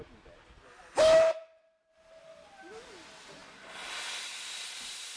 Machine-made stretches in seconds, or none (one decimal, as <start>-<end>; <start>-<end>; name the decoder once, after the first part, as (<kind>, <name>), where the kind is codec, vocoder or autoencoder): none